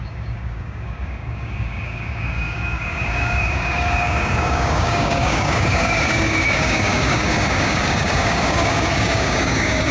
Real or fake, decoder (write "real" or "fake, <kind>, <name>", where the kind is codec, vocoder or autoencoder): fake, codec, DAC